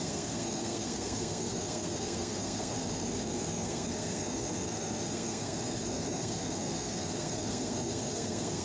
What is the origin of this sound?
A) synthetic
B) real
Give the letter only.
A